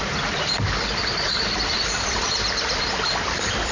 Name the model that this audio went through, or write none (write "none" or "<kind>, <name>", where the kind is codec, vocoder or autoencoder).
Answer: vocoder, BigVGAN v2